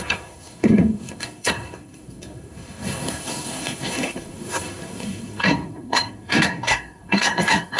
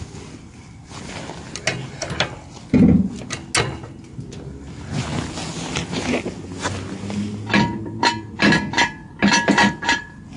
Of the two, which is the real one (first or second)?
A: second